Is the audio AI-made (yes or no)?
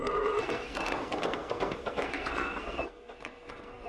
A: yes